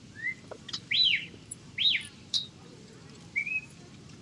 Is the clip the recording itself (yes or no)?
no